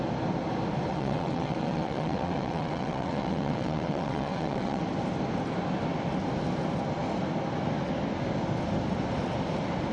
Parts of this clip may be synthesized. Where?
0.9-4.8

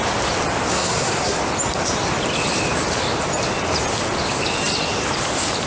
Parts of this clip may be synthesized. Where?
0.7-1.4

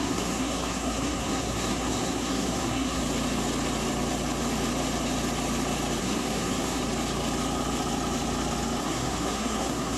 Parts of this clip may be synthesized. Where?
0.0-3.0; 6.0-6.8; 8.8-10.0

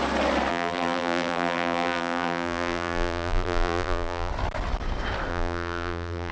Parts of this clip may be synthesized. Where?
0.5-4.3; 5.3-6.3